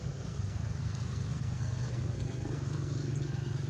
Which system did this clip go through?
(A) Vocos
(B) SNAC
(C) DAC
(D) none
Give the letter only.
B